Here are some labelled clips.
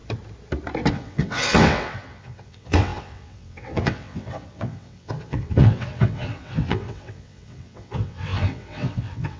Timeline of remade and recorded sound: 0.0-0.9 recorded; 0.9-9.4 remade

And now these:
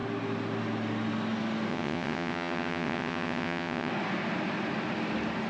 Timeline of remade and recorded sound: 0.0-1.7 recorded; 1.7-3.9 remade; 3.9-5.5 recorded

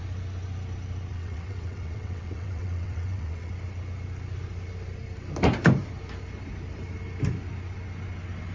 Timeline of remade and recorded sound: 0.0-1.1 recorded; 1.1-3.5 remade; 3.5-8.5 recorded

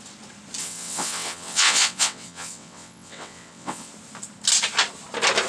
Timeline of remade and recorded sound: 0.0-0.6 recorded; 0.6-3.9 remade; 3.9-5.5 recorded

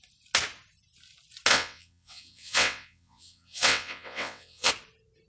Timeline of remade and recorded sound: 0.0-1.5 recorded; 1.5-4.7 remade; 4.7-5.3 recorded

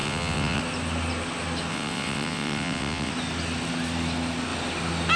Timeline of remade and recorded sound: 0.0-0.6 remade; 0.6-1.7 recorded; 1.7-3.1 remade; 3.1-5.2 recorded